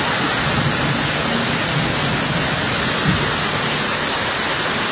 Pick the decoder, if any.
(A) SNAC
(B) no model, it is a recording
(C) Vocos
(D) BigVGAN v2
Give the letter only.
B